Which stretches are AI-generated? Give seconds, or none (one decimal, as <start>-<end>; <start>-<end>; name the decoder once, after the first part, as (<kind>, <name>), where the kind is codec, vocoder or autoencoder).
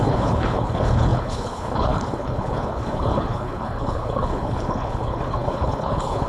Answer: 0.0-6.3 (codec, HILCodec)